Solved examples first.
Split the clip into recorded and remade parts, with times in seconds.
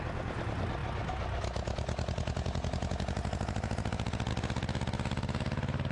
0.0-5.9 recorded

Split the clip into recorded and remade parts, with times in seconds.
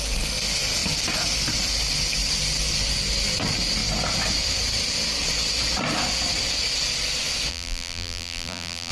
0.0-7.5 recorded; 7.5-8.9 remade